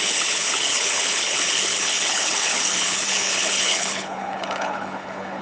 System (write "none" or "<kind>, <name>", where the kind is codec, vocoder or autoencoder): codec, HILCodec